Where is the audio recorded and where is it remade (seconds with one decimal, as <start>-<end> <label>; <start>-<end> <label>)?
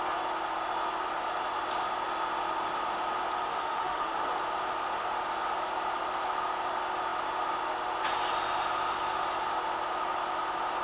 0.0-3.5 recorded; 3.5-4.2 remade; 4.2-10.8 recorded